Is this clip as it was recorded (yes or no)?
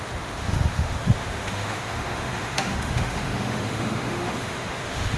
no